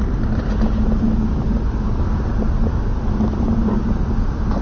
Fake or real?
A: real